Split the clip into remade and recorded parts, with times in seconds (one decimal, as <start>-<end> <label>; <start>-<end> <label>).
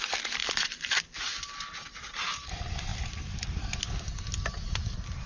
0.0-2.9 recorded; 2.9-3.8 remade; 3.8-5.3 recorded